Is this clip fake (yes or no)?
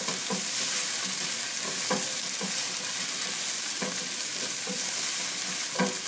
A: no